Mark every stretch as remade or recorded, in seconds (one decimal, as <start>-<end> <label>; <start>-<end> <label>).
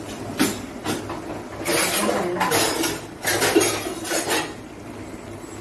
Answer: 0.0-5.6 recorded